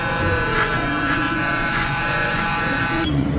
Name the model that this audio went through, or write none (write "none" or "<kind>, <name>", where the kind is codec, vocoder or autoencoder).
vocoder, Vocos